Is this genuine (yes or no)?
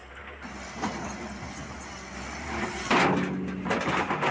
yes